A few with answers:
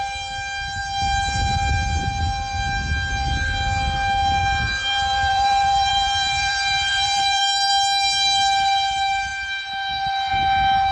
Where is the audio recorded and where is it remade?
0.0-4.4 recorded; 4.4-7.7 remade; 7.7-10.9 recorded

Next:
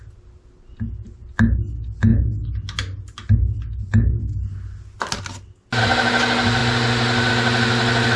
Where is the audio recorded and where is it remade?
0.0-8.2 recorded

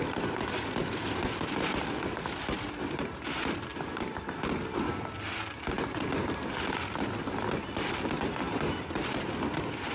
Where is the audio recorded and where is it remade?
0.0-3.7 remade; 3.7-6.5 recorded; 6.5-9.9 remade

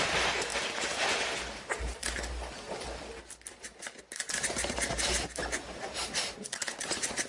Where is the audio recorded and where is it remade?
0.0-0.5 remade; 0.5-4.0 recorded; 4.0-7.3 remade

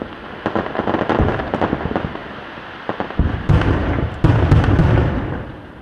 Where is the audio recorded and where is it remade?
0.0-2.2 remade; 2.2-3.4 recorded; 3.4-5.8 remade

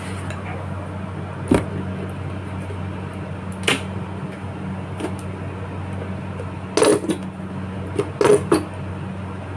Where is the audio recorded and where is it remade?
0.0-9.6 recorded